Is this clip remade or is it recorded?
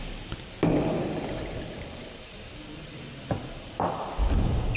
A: recorded